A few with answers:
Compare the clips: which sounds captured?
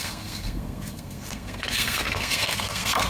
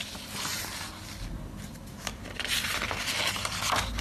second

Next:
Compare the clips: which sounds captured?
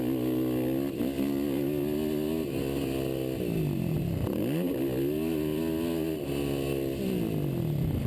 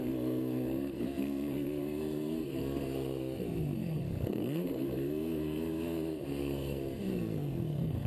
first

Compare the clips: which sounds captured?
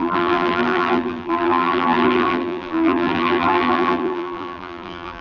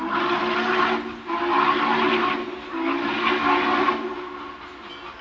second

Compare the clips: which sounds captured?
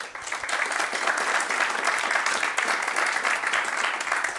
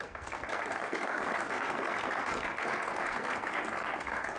first